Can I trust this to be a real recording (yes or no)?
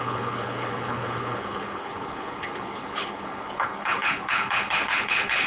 no